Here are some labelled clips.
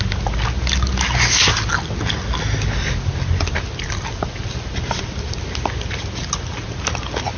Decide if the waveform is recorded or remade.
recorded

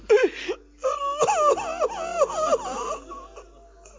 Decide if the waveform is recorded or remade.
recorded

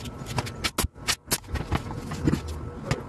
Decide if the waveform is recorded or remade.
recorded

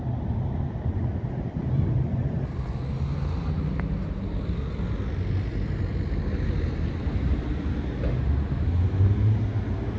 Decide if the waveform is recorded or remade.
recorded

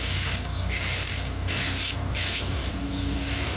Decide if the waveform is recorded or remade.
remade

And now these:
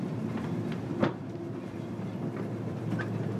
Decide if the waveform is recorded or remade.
remade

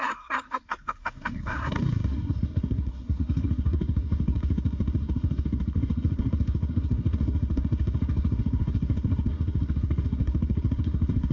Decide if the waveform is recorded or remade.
remade